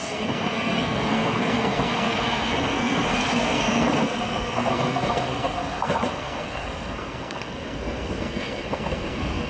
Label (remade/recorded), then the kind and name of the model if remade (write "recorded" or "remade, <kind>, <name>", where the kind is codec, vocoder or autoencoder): remade, codec, SNAC